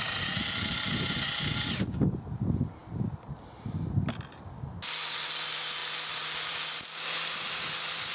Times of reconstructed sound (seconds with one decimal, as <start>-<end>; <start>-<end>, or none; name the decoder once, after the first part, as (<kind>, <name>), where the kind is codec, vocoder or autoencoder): none